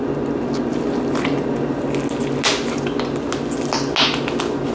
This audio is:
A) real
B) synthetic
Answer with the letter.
A